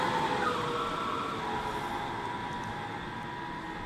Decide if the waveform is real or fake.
real